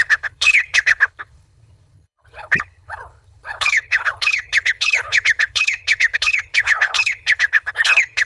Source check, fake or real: fake